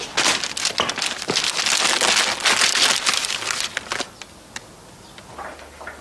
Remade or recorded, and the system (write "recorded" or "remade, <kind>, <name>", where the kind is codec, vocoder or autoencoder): recorded